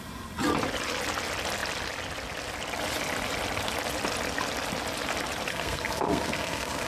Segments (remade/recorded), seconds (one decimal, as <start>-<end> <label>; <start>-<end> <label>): 0.0-5.5 recorded; 5.5-6.9 remade